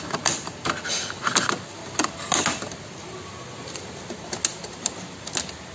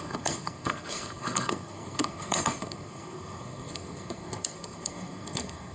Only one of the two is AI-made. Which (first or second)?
second